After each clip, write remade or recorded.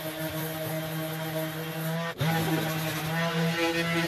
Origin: recorded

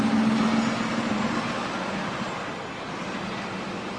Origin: recorded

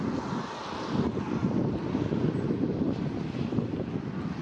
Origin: recorded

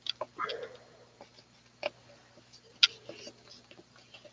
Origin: recorded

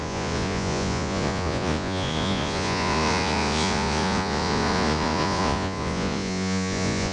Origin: remade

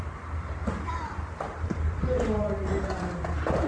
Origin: remade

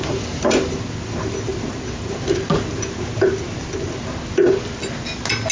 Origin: recorded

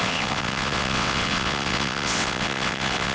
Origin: remade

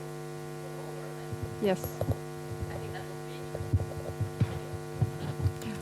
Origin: recorded